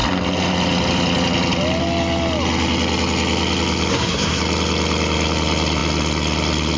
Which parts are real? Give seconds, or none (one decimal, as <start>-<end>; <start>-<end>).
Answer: 0.0-3.9; 4.4-6.8